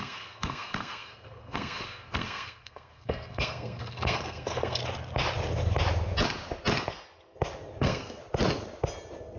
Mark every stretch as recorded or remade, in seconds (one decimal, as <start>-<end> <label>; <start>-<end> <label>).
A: 0.0-4.8 remade; 4.8-7.8 recorded; 7.8-8.2 remade; 8.2-9.4 recorded